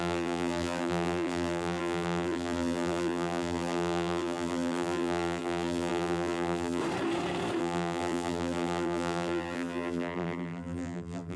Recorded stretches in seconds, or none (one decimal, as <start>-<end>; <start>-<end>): 6.8-7.6